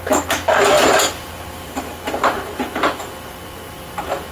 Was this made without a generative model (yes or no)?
yes